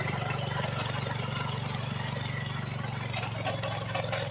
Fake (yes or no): no